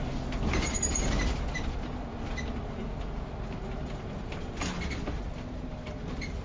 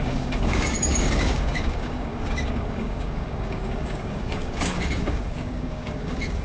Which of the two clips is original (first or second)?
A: first